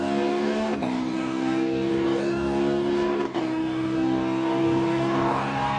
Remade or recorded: remade